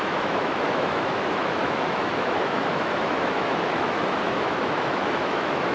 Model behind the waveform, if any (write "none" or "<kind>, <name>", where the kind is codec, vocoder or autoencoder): autoencoder, DAC-VAE